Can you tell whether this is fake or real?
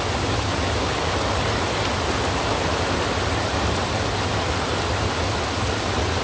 real